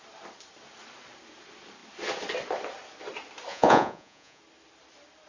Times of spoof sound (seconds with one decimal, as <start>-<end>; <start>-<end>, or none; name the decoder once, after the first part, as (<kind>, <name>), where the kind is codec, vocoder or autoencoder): 3.5-4.4 (vocoder, Vocos)